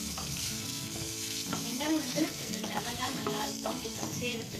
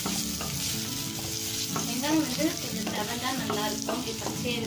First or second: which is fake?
first